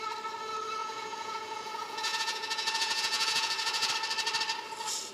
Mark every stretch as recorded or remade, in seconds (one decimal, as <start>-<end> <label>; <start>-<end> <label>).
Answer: 0.0-0.8 recorded; 0.8-3.9 remade; 3.9-5.1 recorded

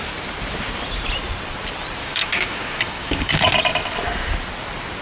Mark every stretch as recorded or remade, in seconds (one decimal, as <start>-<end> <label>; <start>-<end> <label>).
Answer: 0.0-2.0 recorded; 2.0-3.4 remade; 3.4-5.0 recorded

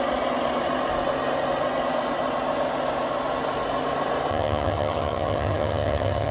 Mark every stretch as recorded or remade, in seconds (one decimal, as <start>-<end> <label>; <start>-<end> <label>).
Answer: 0.0-4.3 recorded; 4.3-6.3 remade

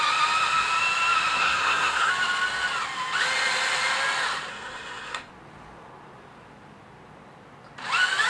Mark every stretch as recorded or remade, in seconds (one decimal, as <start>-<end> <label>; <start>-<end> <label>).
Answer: 0.0-1.4 recorded; 1.4-2.1 remade; 2.1-4.5 recorded; 4.5-5.3 remade; 5.3-8.3 recorded

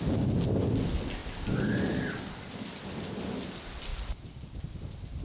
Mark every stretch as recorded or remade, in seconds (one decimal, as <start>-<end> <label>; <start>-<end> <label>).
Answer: 0.0-1.2 recorded; 1.2-3.2 remade; 3.2-3.9 recorded; 3.9-4.6 remade; 4.6-5.2 recorded

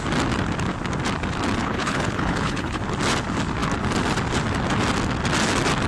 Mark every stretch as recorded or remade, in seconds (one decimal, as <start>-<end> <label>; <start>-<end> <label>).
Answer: 0.0-1.6 recorded; 1.6-2.8 remade; 2.8-5.9 recorded

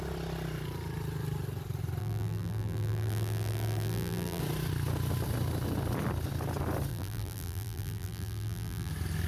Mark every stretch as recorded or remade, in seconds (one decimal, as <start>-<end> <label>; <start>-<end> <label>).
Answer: 0.0-2.0 recorded; 2.0-4.4 remade; 4.4-6.9 recorded; 6.9-8.9 remade; 8.9-9.3 recorded

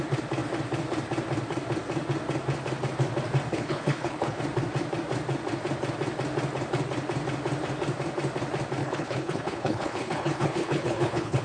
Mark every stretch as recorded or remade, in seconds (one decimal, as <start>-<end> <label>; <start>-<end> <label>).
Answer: 0.0-3.5 recorded; 3.5-4.4 remade; 4.4-8.8 recorded; 8.8-11.4 remade